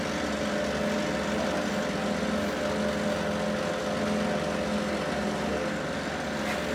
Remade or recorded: recorded